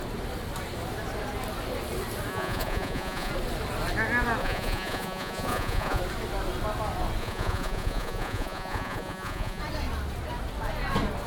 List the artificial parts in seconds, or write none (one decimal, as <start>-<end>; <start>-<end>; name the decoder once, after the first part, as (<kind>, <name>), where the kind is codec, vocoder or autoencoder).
2.3-3.3 (vocoder, Vocos); 4.4-6.0; 7.2-9.6